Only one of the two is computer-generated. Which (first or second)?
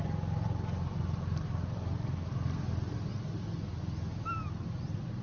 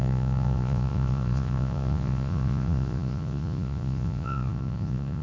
second